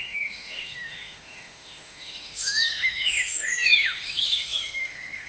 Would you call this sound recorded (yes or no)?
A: no